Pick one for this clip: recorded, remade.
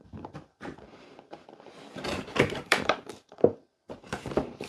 remade